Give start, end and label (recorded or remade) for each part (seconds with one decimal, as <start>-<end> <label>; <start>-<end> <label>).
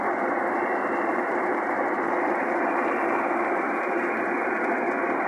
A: 0.0-0.7 recorded; 0.7-3.9 remade; 3.9-5.3 recorded